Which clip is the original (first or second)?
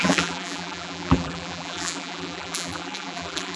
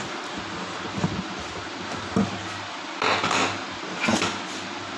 second